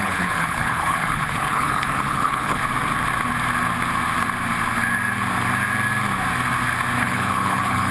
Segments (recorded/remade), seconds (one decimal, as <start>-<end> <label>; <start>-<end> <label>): 0.0-2.6 remade; 2.6-7.0 recorded; 7.0-7.9 remade